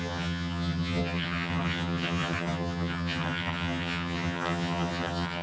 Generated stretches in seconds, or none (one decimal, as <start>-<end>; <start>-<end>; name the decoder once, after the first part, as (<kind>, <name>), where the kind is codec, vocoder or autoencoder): 0.0-5.4 (vocoder, HiFi-GAN)

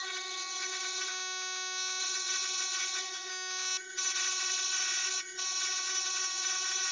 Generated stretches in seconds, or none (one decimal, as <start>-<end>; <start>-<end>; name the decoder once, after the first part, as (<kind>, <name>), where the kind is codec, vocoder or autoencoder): 0.0-1.1 (vocoder, HiFi-GAN); 2.0-3.3; 3.8-6.9